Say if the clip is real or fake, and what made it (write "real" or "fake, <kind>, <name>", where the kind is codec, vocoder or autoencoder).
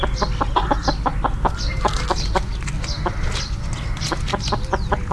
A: real